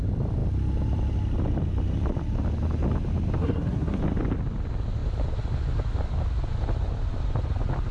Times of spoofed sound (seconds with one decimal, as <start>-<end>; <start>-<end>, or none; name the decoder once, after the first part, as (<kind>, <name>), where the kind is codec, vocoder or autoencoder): 3.4-4.0 (codec, SNAC)